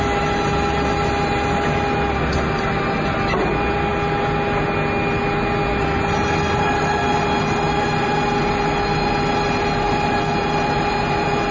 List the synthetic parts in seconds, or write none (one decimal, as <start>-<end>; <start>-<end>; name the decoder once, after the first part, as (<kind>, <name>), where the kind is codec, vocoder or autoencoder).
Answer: none